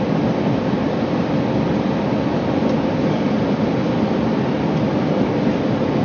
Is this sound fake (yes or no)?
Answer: no